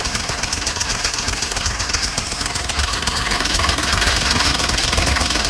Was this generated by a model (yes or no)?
yes